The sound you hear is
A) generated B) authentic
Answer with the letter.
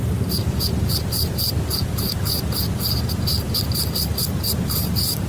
B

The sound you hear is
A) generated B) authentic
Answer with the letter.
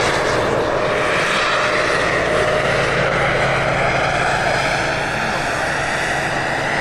B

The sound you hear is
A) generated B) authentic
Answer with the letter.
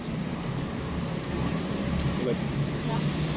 A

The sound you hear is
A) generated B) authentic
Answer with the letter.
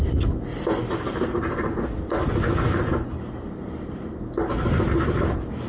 B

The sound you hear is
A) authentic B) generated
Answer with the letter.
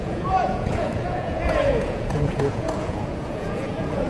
B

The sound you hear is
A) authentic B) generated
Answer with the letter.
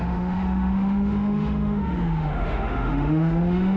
B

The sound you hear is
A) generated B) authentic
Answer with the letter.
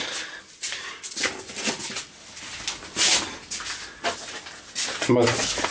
B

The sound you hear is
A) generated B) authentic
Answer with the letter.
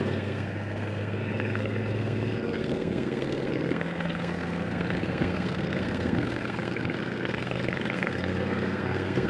A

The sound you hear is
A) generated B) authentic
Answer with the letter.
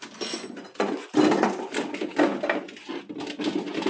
B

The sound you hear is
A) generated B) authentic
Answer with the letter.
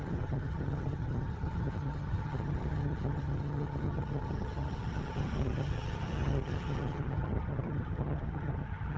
A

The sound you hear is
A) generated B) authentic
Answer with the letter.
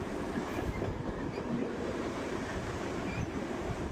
A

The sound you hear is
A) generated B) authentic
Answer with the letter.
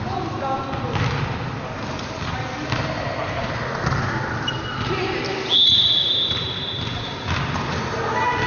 B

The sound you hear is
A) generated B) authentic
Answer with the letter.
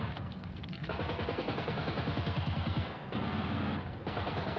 A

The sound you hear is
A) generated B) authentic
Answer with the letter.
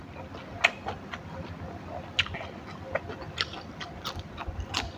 B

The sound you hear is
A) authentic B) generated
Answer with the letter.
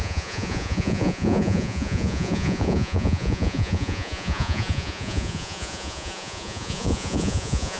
B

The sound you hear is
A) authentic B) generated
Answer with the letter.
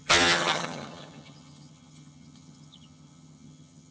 B